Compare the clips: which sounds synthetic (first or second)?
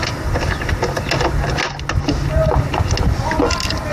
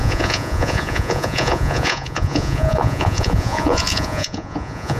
second